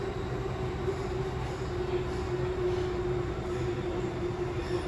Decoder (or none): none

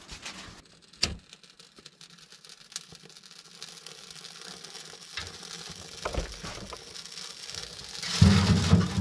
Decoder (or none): none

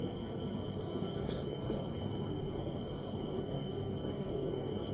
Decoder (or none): codec, SNAC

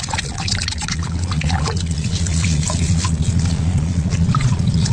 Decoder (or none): vocoder, Vocos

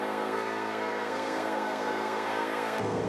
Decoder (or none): codec, SNAC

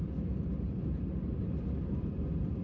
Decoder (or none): none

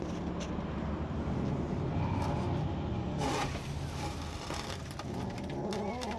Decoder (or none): none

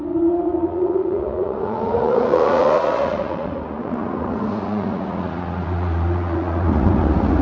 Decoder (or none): vocoder, Vocos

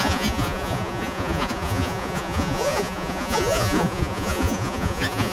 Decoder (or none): vocoder, Vocos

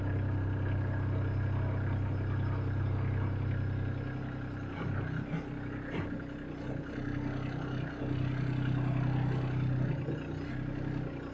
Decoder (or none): none